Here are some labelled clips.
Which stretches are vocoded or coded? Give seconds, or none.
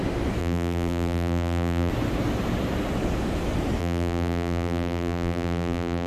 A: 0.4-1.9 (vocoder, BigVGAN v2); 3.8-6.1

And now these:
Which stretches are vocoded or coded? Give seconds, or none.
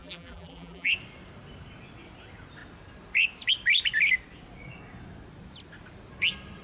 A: 0.0-0.9 (vocoder, BigVGAN v2)